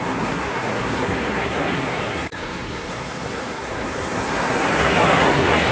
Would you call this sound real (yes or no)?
no